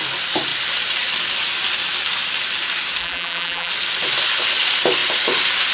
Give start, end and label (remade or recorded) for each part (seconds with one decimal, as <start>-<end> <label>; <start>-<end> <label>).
0.0-3.0 recorded; 3.0-3.7 remade; 3.7-5.7 recorded